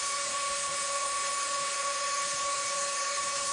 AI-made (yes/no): yes